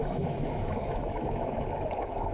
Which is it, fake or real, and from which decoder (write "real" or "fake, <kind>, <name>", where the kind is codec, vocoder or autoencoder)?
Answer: fake, autoencoder, DAC-VAE